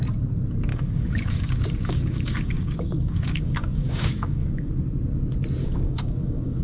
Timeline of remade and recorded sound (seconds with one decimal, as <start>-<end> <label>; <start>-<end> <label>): 0.0-0.7 recorded; 0.7-4.7 remade; 4.7-5.6 recorded; 5.6-6.6 remade